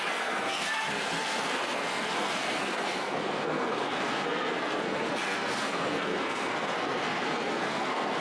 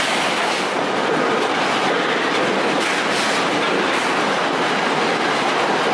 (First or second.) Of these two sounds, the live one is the second